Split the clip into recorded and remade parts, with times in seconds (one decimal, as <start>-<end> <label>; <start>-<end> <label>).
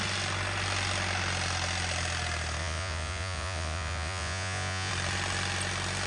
0.0-2.6 recorded; 2.6-4.9 remade; 4.9-6.1 recorded